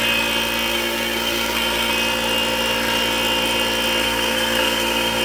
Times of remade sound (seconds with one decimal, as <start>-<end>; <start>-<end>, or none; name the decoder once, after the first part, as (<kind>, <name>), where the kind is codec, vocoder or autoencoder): 0.7-1.9 (codec, SNAC); 4.0-5.2